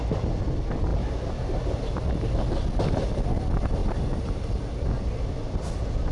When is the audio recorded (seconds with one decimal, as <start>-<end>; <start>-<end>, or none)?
0.0-6.1